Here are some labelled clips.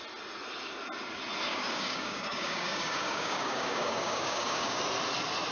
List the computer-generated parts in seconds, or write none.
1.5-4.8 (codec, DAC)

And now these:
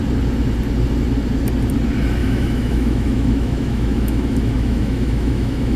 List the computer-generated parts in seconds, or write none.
2.2-5.8 (autoencoder, DAC-VAE)

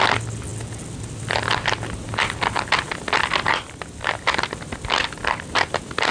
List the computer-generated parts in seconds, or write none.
none

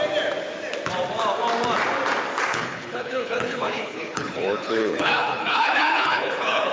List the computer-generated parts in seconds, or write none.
2.5-6.7 (codec, HILCodec)

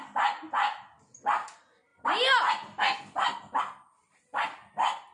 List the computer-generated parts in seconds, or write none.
none